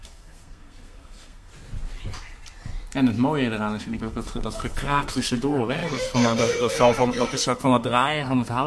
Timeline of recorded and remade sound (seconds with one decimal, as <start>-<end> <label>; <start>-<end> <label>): 0.0-1.5 remade; 1.5-3.8 recorded; 3.8-8.7 remade